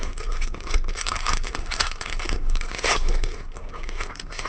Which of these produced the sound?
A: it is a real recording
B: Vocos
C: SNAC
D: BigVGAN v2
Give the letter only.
C